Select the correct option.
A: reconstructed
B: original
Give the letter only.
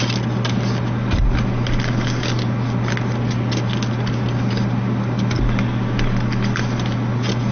B